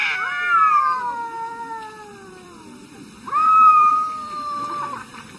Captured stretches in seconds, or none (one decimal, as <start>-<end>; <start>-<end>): 0.0-2.1